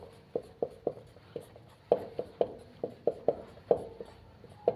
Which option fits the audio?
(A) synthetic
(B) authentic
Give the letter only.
B